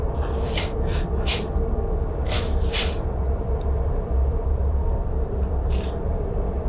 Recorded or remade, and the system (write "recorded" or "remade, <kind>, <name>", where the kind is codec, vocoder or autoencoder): remade, vocoder, BigVGAN v2